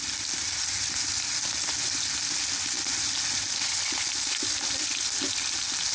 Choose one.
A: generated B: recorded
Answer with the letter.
B